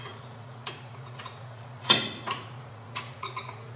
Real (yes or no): no